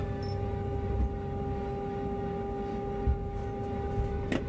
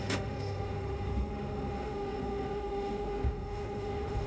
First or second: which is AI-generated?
second